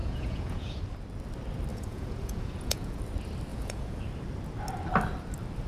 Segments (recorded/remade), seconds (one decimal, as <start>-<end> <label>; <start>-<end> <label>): 0.0-0.8 remade; 0.8-1.7 recorded; 1.7-3.0 remade; 3.0-3.5 recorded; 3.5-4.0 remade; 4.0-5.7 recorded